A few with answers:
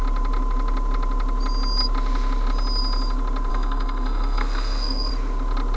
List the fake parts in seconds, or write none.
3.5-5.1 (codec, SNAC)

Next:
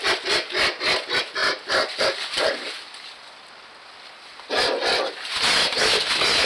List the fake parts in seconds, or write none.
1.4-5.0 (vocoder, BigVGAN v2)